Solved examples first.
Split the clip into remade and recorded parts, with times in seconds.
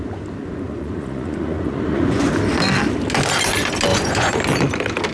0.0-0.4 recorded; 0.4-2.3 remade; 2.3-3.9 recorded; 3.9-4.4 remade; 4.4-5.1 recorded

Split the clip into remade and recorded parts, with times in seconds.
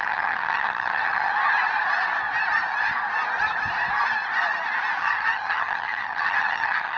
0.0-1.3 remade; 1.3-5.0 recorded; 5.0-7.0 remade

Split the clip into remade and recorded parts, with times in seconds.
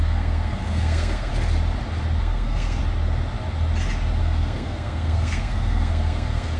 0.0-1.3 remade; 1.3-2.2 recorded; 2.2-2.8 remade; 2.8-4.2 recorded; 4.2-6.6 remade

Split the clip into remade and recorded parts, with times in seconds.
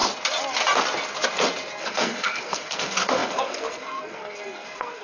0.0-1.8 recorded; 1.8-5.0 remade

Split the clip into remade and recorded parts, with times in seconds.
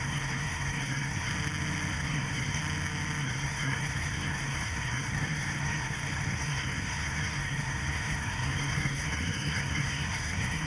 0.0-1.3 remade; 1.3-1.9 recorded; 1.9-2.6 remade; 2.6-3.2 recorded; 3.2-10.7 remade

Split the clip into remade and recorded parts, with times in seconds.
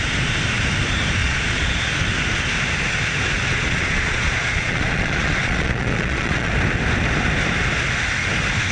0.0-1.2 recorded; 1.2-1.8 remade; 1.8-3.5 recorded; 3.5-6.5 remade; 6.5-8.7 recorded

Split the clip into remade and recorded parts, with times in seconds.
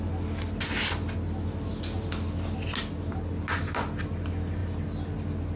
0.0-5.6 recorded